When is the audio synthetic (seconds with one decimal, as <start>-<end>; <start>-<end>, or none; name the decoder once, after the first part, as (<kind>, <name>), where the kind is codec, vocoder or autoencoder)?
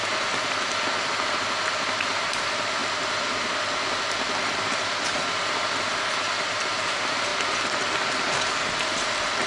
none